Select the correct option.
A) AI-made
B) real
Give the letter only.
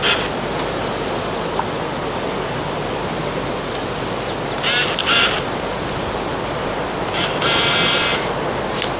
B